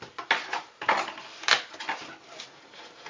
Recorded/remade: recorded